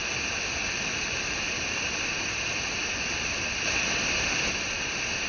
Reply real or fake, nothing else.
real